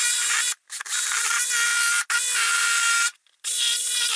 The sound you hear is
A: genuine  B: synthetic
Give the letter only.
A